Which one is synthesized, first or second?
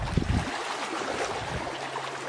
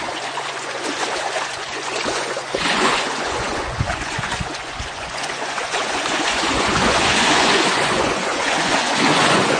second